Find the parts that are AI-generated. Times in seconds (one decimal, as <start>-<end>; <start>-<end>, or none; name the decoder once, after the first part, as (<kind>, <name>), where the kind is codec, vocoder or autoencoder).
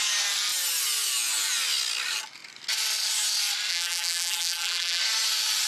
3.7-5.0 (vocoder, BigVGAN v2)